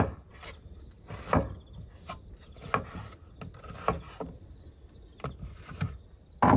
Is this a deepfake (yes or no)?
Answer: no